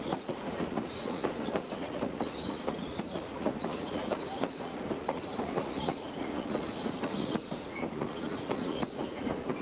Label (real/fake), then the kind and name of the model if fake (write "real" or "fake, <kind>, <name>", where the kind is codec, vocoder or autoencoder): fake, vocoder, Vocos